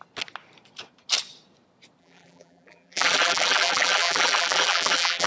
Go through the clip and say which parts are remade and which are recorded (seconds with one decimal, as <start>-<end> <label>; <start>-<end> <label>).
0.0-2.0 recorded; 2.0-5.3 remade